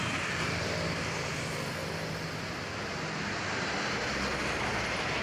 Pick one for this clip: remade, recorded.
recorded